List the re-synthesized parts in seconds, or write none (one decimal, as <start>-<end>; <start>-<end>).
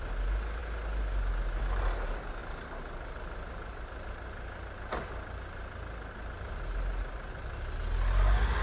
none